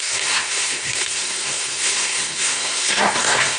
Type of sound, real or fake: fake